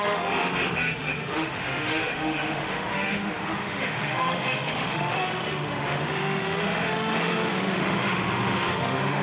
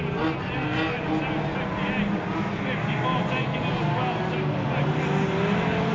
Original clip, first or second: second